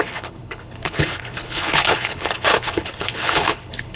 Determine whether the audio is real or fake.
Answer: fake